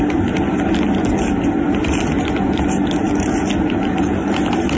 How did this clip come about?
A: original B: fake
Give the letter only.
A